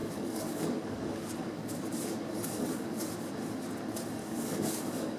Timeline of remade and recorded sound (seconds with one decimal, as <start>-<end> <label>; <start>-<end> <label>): 0.0-3.1 remade; 3.1-4.2 recorded; 4.2-5.2 remade